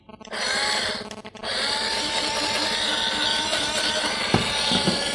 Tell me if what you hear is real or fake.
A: real